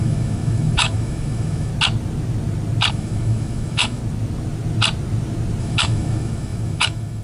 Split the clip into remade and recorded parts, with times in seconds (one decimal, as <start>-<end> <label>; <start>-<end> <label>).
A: 0.0-1.7 remade; 1.7-2.9 recorded; 2.9-4.0 remade; 4.0-5.6 recorded; 5.6-7.2 remade